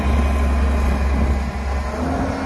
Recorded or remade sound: recorded